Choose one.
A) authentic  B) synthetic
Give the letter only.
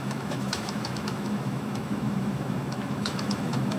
B